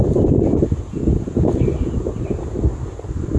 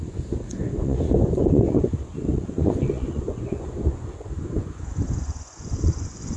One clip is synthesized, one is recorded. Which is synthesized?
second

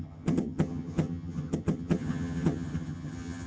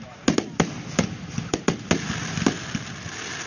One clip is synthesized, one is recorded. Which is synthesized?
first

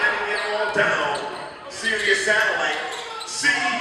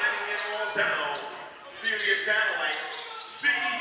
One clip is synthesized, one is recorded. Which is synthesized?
first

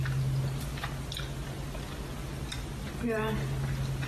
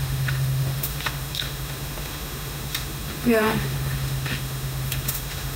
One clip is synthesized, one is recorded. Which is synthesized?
second